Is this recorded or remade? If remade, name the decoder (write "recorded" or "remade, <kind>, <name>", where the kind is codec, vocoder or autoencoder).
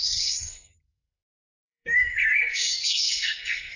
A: remade, codec, SNAC